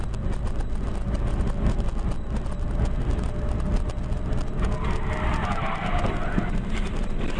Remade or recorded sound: recorded